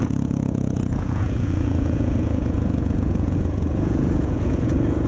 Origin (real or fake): fake